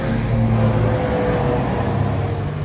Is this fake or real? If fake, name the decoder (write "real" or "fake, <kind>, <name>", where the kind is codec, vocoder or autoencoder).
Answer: real